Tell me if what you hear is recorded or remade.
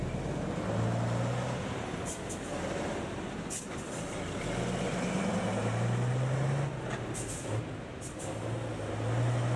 recorded